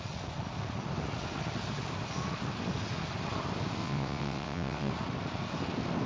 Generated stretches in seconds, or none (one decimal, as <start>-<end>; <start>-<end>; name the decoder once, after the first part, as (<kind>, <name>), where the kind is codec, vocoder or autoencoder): 3.8-4.9 (vocoder, WaveNeXt)

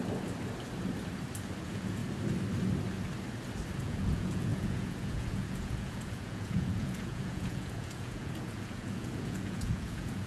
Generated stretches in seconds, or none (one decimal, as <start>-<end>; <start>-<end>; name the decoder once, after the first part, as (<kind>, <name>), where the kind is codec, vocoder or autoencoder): 1.6-2.0 (vocoder, Vocos); 3.8-10.3

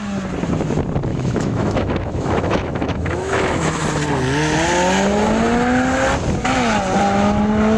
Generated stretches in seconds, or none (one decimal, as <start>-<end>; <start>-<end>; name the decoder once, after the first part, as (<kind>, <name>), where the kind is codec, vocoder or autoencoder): 1.1-3.8 (autoencoder, DAC-VAE)

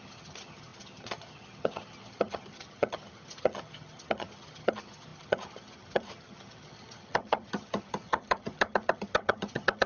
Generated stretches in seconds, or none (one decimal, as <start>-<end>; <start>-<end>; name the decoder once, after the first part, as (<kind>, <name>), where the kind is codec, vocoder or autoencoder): 0.0-9.9 (vocoder, HiFi-GAN)

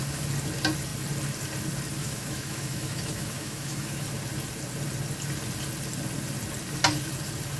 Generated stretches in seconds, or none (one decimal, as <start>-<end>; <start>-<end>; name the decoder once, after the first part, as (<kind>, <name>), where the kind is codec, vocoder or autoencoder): 2.0-4.0 (autoencoder, DAC-VAE)